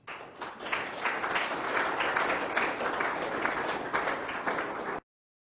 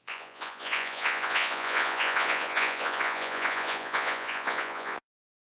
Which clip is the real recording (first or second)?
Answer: first